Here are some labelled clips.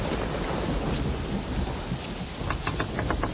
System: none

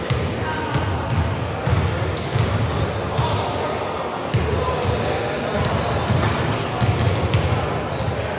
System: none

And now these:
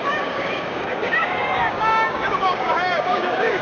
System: codec, DAC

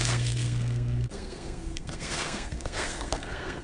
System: codec, SNAC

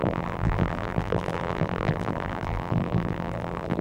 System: vocoder, BigVGAN v2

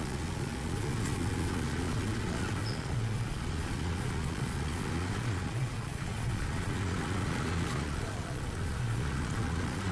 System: vocoder, Vocos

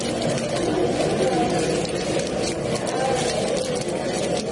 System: none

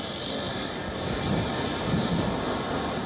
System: none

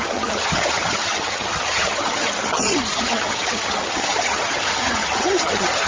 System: vocoder, HiFi-GAN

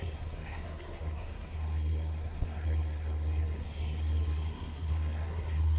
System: codec, SNAC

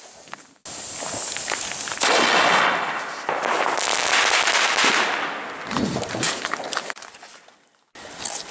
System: none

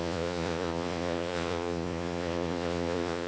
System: vocoder, Vocos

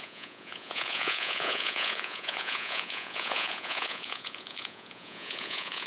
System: vocoder, Vocos